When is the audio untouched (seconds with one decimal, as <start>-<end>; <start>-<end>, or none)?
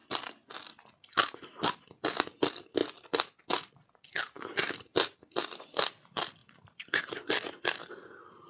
0.0-6.4; 7.0-8.5